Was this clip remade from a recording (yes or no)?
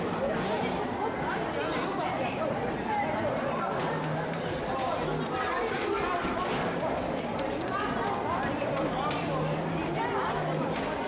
no